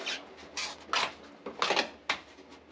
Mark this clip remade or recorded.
recorded